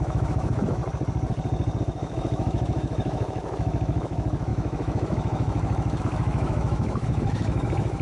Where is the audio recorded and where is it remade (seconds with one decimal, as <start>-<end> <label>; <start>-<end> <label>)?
0.0-0.8 remade; 0.8-1.8 recorded; 1.8-8.0 remade